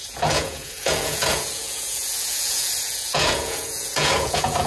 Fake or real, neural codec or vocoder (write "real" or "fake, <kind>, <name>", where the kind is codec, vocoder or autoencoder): fake, vocoder, Vocos